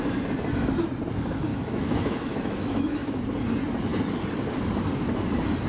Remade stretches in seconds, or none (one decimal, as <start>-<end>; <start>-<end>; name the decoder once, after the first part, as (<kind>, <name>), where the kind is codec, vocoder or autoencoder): 1.5-3.2 (autoencoder, DAC-VAE)